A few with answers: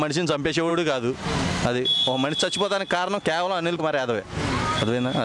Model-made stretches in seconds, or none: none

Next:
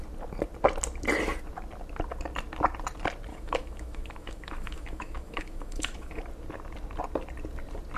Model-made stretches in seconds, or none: 3.3-6.2 (autoencoder, DAC-VAE)

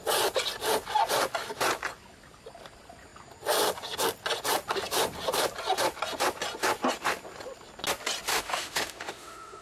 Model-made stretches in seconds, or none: 8.3-9.6 (autoencoder, DAC-VAE)

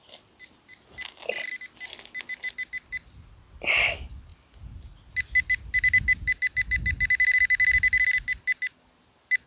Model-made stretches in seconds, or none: none

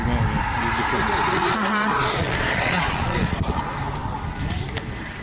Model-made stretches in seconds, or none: 1.3-3.6 (vocoder, Vocos)

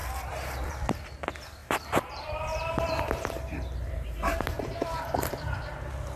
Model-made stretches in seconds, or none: 0.0-0.7 (vocoder, BigVGAN v2); 1.6-5.3